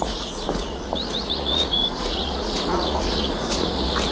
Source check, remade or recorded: remade